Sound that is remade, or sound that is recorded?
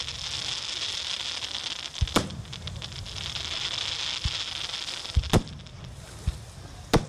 recorded